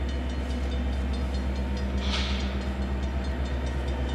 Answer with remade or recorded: recorded